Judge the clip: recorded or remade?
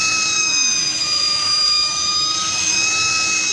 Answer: remade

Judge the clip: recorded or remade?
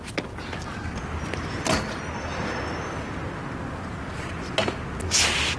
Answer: recorded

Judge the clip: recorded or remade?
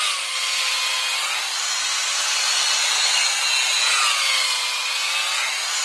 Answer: recorded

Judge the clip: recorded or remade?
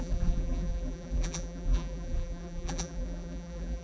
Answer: remade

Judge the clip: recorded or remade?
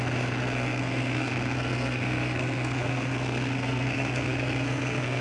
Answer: remade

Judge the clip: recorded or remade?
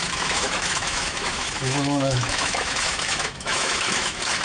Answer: remade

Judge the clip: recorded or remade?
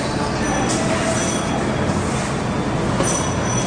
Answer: recorded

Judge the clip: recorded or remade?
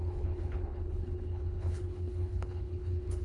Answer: remade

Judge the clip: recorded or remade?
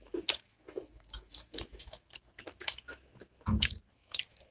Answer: remade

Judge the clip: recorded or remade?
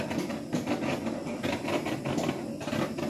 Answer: remade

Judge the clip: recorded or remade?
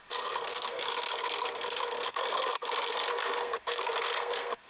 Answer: remade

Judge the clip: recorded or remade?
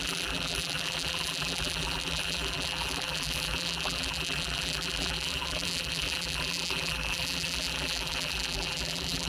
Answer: remade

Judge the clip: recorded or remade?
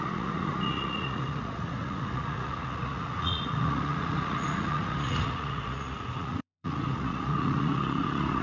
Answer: remade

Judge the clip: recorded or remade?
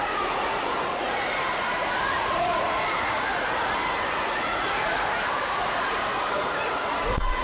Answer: remade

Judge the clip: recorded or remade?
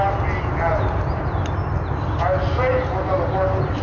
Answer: recorded